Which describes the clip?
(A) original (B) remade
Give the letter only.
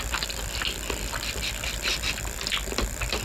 A